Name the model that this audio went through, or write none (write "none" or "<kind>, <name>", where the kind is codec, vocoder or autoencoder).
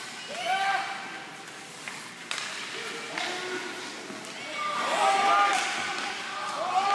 none